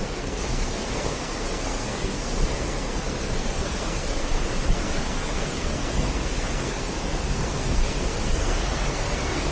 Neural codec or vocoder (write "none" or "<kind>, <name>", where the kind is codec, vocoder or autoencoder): codec, SNAC